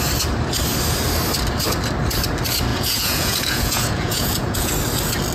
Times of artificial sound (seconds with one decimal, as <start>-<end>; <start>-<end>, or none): 2.7-4.7